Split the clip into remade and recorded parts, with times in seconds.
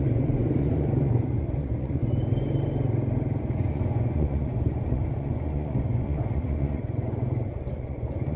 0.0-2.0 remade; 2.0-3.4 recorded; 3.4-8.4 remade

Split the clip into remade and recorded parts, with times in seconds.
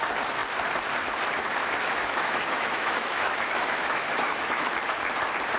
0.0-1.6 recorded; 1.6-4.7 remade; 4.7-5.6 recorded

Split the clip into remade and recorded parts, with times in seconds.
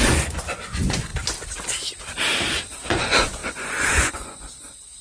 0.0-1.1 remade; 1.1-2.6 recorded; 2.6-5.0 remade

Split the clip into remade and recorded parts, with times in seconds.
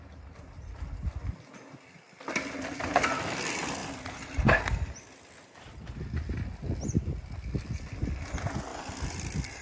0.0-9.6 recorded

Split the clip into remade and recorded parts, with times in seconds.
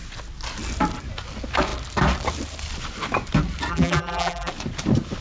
0.0-3.7 recorded; 3.7-4.5 remade; 4.5-5.2 recorded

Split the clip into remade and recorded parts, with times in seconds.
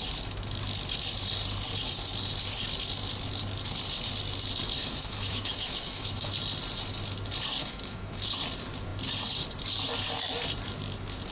0.0-4.8 recorded; 4.8-6.3 remade; 6.3-7.6 recorded; 7.6-8.2 remade; 8.2-11.3 recorded